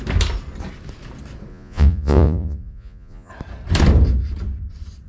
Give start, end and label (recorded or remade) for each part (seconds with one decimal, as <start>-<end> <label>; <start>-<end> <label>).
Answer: 0.0-1.5 recorded; 1.5-3.3 remade; 3.3-5.1 recorded

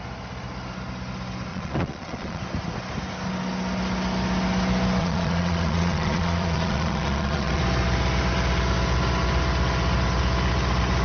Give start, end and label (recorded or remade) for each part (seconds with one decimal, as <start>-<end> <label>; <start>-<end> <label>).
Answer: 0.0-1.5 recorded; 1.5-2.4 remade; 2.4-5.0 recorded; 5.0-7.6 remade; 7.6-11.0 recorded

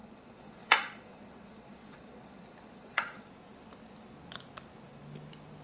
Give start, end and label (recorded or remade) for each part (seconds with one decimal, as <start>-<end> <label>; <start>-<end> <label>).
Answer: 0.0-3.3 remade; 3.3-5.6 recorded

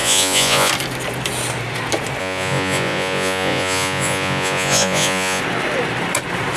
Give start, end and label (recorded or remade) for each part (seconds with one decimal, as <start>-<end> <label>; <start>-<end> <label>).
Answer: 0.0-0.7 remade; 0.7-2.2 recorded; 2.2-5.4 remade; 5.4-6.6 recorded

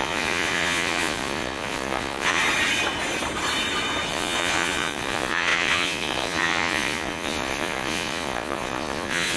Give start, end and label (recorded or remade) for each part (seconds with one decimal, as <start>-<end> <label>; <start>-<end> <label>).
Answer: 0.0-2.4 remade; 2.4-4.1 recorded; 4.1-9.4 remade

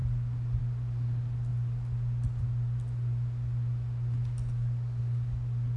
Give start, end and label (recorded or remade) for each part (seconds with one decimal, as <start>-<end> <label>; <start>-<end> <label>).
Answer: 0.0-5.8 recorded

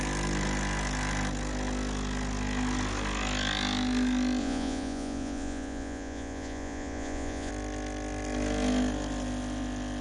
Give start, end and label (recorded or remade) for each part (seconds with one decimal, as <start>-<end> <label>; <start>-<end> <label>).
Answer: 0.0-4.4 recorded; 4.4-7.5 remade; 7.5-10.0 recorded